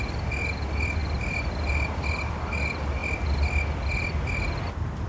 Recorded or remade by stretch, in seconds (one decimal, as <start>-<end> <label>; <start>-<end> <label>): 0.0-5.1 recorded